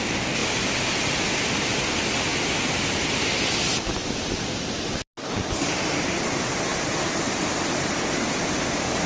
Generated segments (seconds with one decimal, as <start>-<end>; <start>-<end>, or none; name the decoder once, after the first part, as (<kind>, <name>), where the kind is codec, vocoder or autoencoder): none